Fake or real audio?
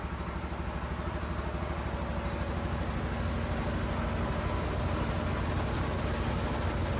real